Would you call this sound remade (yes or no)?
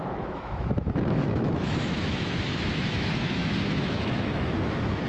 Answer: yes